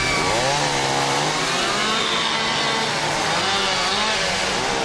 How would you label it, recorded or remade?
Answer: recorded